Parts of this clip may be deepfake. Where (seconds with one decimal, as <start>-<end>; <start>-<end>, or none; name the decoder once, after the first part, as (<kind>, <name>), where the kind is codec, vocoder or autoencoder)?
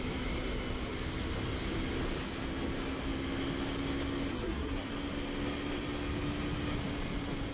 4.3-4.9 (codec, SNAC)